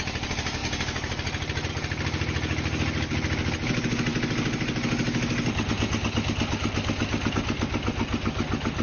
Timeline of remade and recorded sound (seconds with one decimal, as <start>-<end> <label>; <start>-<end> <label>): 0.0-8.8 recorded